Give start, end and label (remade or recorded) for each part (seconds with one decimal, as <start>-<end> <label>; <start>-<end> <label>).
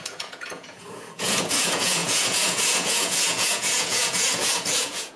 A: 0.0-5.2 remade